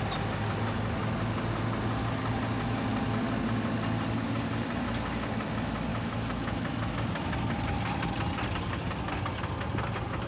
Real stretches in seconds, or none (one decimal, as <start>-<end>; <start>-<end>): 0.0-5.9; 6.9-10.3